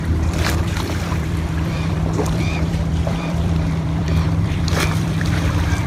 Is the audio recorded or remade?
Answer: remade